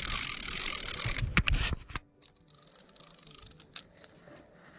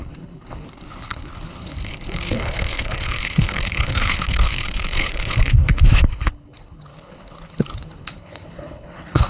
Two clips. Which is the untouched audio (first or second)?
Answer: first